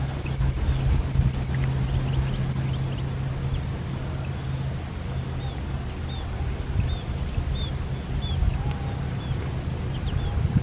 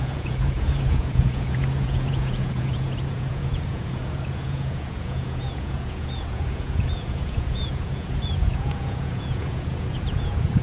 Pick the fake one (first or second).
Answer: second